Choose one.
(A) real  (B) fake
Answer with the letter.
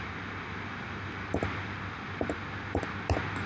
A